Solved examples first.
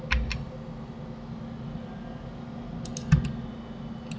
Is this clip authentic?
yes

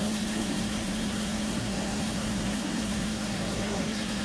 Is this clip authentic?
no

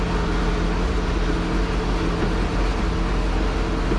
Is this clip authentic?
yes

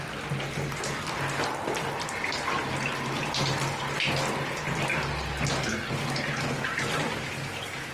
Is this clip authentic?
yes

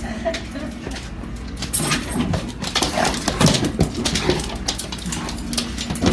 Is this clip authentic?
yes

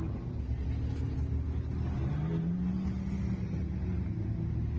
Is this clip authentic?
yes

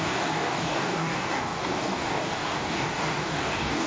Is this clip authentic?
no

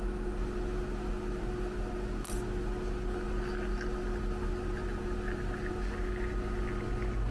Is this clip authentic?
yes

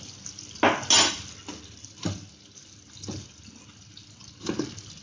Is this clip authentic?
yes